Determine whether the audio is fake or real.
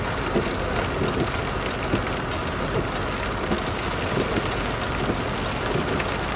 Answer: real